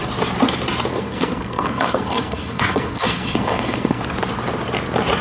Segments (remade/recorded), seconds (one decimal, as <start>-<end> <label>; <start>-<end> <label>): 0.0-0.9 recorded; 0.9-4.0 remade; 4.0-5.2 recorded